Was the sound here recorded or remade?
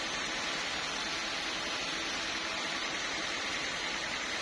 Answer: recorded